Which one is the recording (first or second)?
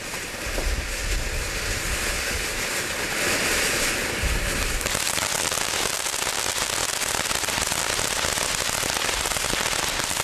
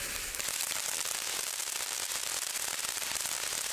first